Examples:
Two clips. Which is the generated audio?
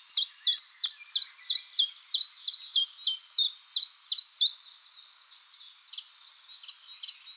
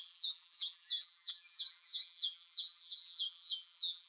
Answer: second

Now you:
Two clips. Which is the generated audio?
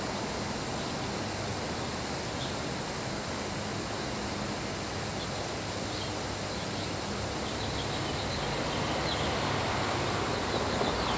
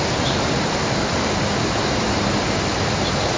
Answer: second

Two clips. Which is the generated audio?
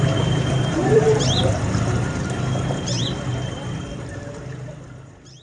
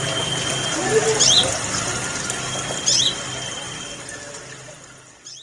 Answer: first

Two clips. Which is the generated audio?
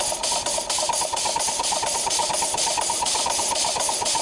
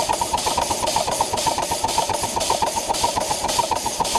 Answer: second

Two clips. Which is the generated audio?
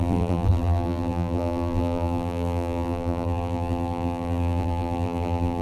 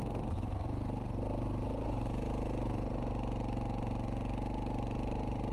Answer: first